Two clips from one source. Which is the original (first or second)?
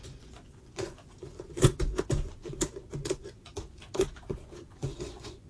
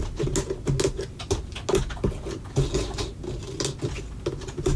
second